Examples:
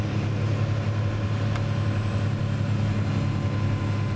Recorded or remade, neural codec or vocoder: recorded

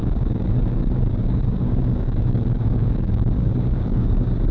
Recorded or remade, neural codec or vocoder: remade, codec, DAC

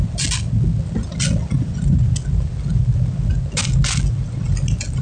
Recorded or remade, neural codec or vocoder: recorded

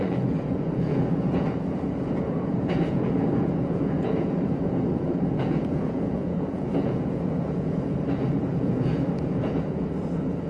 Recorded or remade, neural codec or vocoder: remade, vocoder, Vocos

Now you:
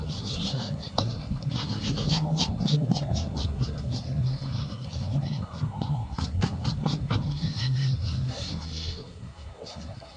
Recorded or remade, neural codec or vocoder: remade, codec, SNAC